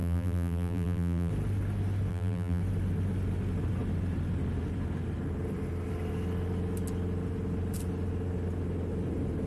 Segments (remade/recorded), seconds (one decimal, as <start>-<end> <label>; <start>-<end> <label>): 0.0-1.3 remade; 1.3-2.1 recorded; 2.1-2.6 remade; 2.6-9.5 recorded